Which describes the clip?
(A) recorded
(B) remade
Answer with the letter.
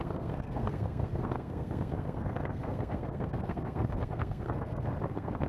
B